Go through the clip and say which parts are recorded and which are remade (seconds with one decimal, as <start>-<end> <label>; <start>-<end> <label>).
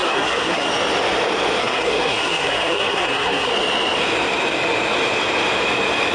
0.0-0.7 remade; 0.7-1.6 recorded; 1.6-3.5 remade; 3.5-6.1 recorded